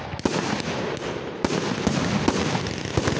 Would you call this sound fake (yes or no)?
no